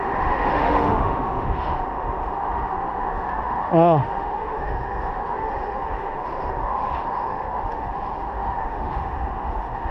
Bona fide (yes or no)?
no